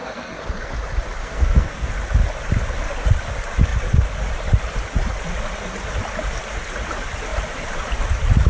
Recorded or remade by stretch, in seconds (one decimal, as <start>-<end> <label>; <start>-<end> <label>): 0.0-0.7 remade; 0.7-1.2 recorded; 1.2-1.9 remade; 1.9-8.5 recorded